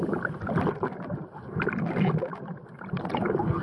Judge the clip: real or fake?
real